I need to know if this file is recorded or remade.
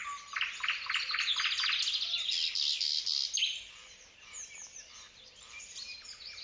recorded